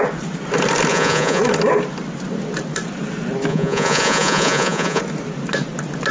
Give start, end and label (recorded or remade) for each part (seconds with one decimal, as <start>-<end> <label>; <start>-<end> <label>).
0.0-0.9 recorded; 0.9-1.4 remade; 1.4-3.5 recorded; 3.5-5.0 remade; 5.0-6.1 recorded

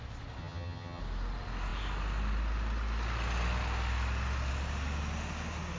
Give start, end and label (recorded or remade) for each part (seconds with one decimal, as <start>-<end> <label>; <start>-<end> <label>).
0.0-0.4 recorded; 0.4-1.0 remade; 1.0-5.8 recorded

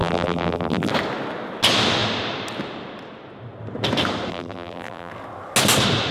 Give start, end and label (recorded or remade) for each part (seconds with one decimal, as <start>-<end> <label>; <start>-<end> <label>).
0.0-0.9 remade; 0.9-4.3 recorded; 4.3-5.1 remade; 5.1-6.1 recorded

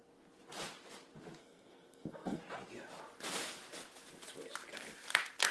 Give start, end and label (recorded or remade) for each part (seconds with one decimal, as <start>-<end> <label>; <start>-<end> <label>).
0.0-1.4 recorded; 1.4-2.4 remade; 2.4-5.5 recorded